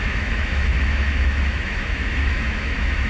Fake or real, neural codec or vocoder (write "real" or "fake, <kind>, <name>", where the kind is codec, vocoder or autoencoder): fake, autoencoder, DAC-VAE